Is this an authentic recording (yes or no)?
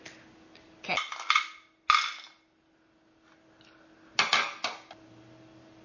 yes